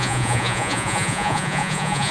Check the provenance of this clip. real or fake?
fake